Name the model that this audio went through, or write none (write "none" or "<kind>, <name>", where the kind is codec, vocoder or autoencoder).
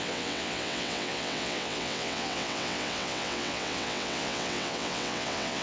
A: vocoder, WaveNeXt